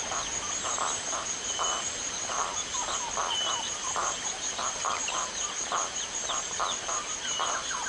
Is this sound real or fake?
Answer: fake